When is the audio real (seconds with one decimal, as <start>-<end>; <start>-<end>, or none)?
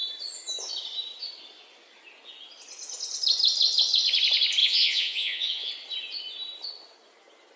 0.0-4.6; 5.7-7.6